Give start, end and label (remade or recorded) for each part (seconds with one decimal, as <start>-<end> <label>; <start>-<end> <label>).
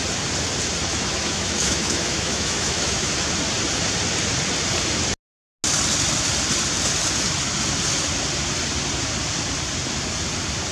0.0-0.9 recorded; 0.9-3.1 remade; 3.1-10.7 recorded